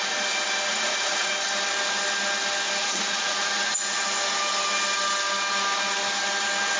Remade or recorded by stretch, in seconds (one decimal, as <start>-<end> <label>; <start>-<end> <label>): 0.0-0.7 recorded; 0.7-1.3 remade; 1.3-2.8 recorded; 2.8-4.0 remade; 4.0-6.8 recorded